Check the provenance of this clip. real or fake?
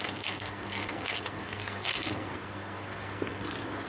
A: fake